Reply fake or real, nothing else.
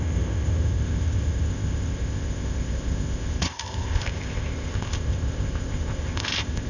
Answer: fake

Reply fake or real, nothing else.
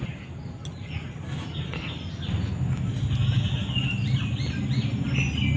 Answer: real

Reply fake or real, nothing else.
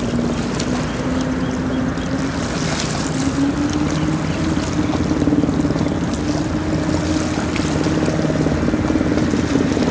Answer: real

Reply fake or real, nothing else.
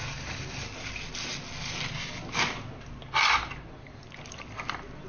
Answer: real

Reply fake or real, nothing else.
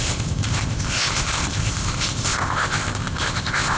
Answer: fake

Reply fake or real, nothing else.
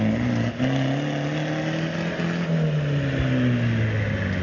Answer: real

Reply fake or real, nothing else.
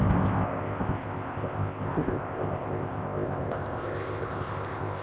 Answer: fake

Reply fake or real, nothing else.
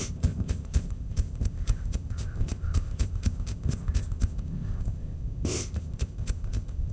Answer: fake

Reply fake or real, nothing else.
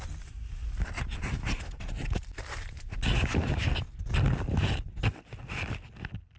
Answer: real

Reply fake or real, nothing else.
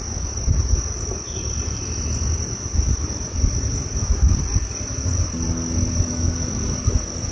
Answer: real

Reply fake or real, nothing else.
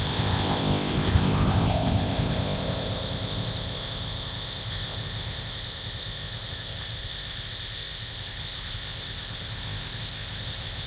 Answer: fake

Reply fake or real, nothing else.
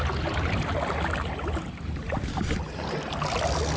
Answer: real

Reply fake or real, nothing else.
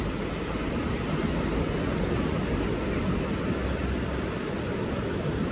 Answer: real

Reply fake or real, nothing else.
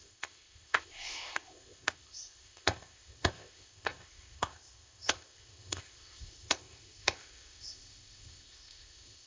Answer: fake